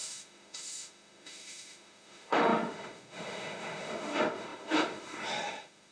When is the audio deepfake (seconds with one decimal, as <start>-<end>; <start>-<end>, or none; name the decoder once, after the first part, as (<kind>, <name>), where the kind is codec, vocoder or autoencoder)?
0.0-5.9 (autoencoder, DAC-VAE)